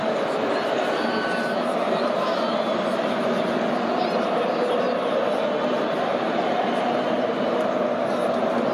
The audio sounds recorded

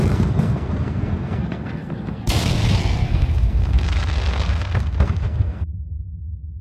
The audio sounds remade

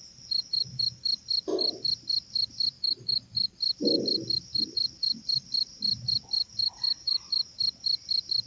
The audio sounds recorded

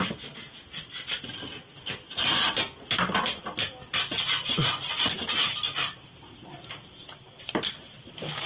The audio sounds recorded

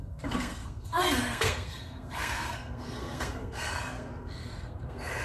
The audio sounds remade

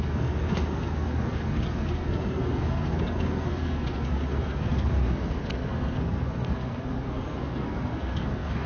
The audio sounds remade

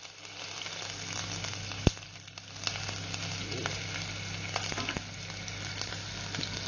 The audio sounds recorded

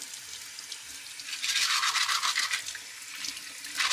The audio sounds recorded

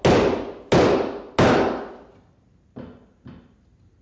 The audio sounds recorded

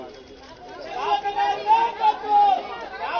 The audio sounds recorded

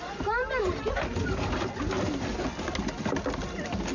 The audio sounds recorded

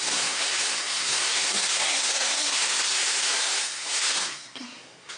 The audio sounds remade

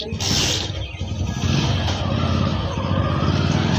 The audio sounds recorded